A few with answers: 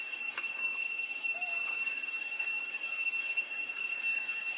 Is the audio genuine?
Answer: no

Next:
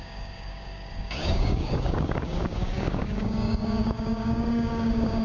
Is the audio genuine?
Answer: no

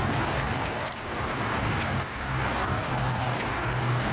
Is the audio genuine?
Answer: no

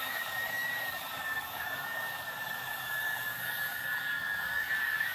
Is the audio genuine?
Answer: no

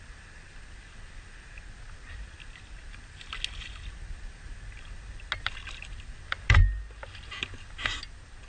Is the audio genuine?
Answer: yes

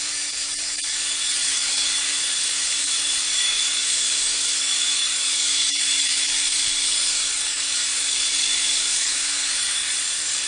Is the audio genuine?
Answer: no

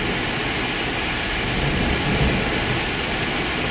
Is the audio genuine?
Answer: yes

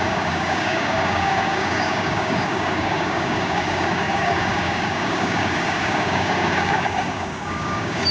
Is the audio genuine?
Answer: no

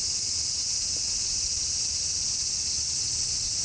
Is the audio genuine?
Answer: yes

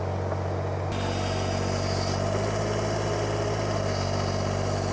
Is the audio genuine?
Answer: yes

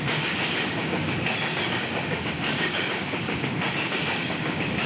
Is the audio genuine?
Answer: no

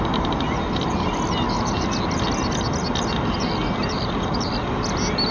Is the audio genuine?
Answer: yes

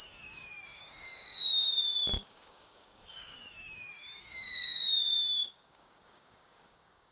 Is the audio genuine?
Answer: no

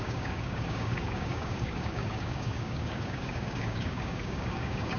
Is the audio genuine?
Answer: no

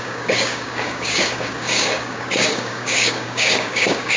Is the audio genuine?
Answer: no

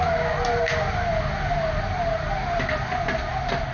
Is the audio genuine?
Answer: yes